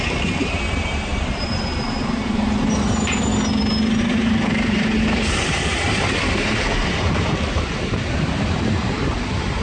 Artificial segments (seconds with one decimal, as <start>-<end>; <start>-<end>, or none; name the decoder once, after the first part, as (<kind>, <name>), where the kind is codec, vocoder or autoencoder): 0.0-3.3 (vocoder, BigVGAN v2); 4.0-9.6